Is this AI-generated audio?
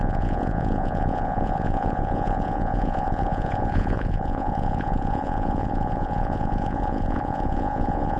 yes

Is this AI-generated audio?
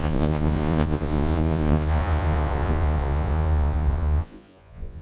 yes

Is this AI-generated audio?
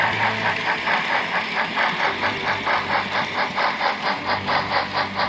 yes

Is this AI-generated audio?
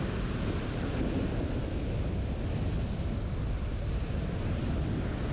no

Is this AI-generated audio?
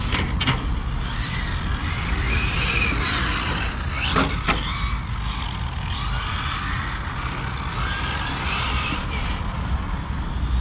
no